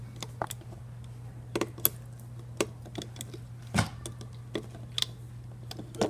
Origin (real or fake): real